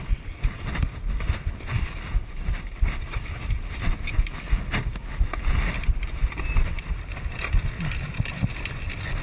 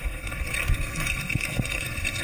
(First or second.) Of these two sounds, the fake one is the second